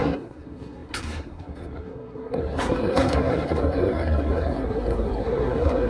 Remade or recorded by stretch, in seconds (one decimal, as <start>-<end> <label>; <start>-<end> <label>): 0.0-5.9 remade